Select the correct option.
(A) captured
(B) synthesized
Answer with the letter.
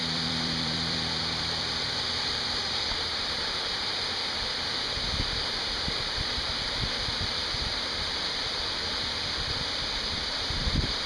B